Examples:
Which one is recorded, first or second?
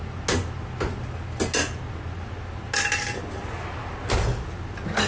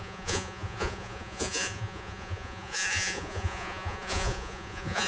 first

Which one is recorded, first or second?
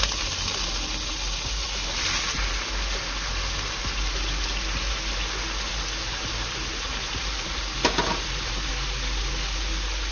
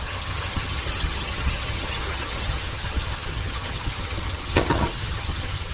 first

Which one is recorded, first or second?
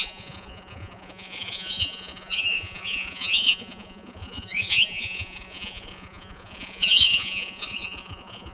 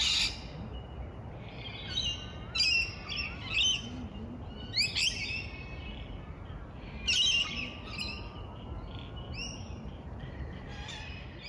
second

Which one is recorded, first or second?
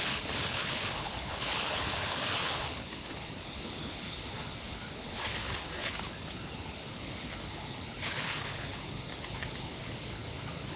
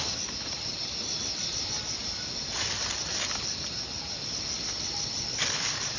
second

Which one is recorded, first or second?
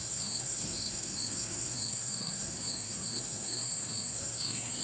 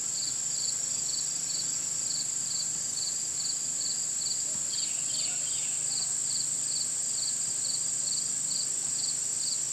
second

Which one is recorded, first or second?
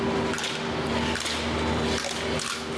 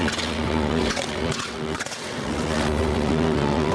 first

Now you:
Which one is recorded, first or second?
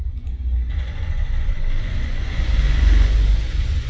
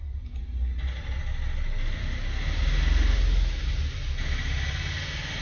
second